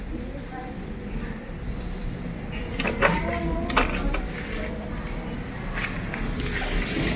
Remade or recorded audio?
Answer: recorded